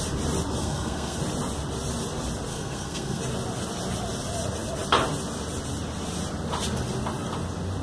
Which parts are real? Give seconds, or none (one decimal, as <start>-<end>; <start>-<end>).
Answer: 0.0-0.6; 1.2-2.5; 3.2-7.8